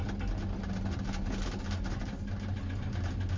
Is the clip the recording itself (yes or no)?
yes